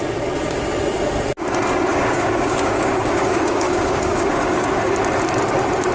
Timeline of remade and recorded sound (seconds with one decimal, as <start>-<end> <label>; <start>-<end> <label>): 0.0-1.9 recorded; 1.9-4.9 remade; 4.9-5.9 recorded